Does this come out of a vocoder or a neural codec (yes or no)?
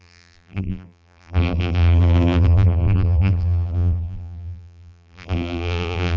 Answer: yes